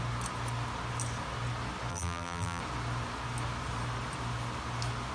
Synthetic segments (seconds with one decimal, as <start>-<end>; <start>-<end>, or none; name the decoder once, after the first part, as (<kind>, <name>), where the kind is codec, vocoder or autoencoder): 1.9-2.6 (vocoder, BigVGAN v2)